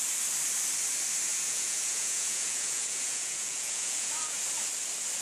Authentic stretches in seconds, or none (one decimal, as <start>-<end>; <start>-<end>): 0.0-1.3; 4.4-5.2